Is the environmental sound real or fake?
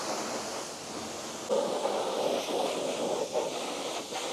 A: real